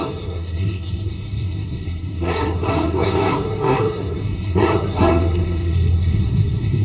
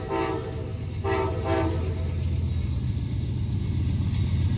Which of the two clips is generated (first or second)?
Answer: first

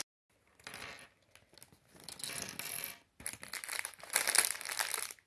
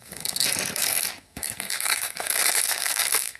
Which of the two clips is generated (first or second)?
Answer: second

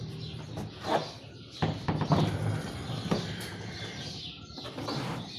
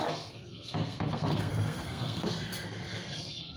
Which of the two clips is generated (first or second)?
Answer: second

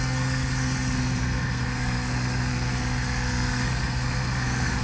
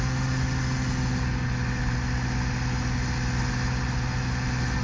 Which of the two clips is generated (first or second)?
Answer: first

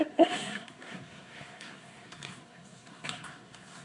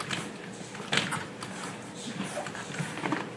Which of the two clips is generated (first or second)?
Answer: first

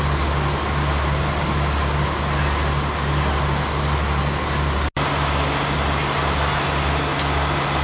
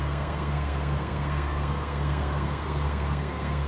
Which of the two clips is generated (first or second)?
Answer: second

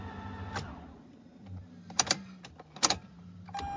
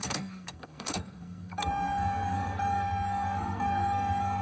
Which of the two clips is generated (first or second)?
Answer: second